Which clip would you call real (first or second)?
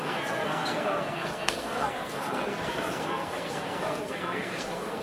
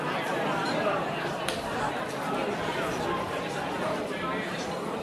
second